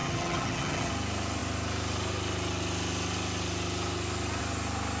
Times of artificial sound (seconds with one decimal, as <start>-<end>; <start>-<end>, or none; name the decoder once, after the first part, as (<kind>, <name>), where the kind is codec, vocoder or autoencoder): 0.0-0.9 (vocoder, HiFi-GAN)